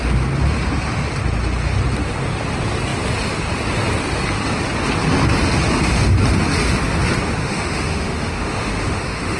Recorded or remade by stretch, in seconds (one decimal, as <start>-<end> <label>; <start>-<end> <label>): 0.0-7.4 recorded; 7.4-9.4 remade